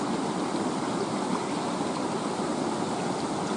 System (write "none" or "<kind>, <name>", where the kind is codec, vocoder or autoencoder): none